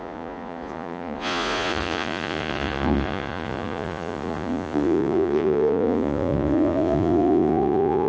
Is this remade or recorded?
remade